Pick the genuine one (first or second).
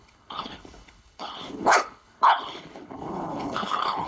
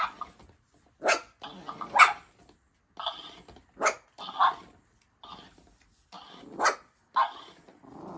second